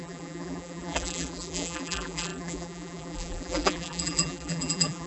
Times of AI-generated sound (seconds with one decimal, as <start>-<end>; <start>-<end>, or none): 0.0-5.1